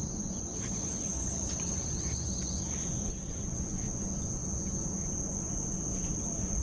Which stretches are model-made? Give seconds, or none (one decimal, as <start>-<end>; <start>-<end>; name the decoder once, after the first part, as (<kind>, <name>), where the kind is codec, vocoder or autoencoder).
0.0-6.6 (vocoder, Vocos)